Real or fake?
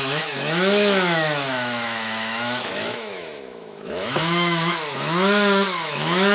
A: fake